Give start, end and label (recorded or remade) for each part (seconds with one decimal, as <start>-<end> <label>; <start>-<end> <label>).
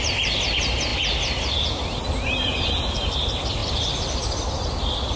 0.0-5.2 recorded